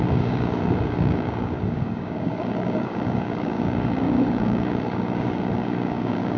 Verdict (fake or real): fake